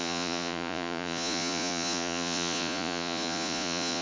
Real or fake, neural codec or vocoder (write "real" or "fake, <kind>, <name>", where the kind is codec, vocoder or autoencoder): fake, vocoder, Vocos